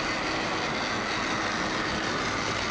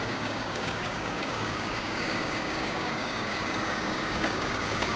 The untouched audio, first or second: first